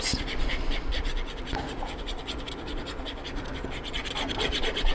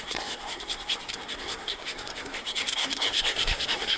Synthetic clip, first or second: second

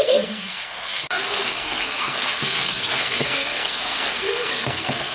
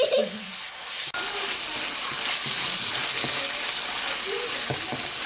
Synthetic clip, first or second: first